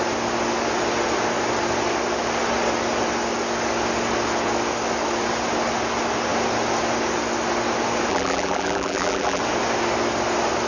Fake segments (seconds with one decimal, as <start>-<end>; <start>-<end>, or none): 8.1-9.4